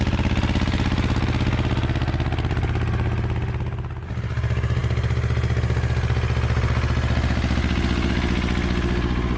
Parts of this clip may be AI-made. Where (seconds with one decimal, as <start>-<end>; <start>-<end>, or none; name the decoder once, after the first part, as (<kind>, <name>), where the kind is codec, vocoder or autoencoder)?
none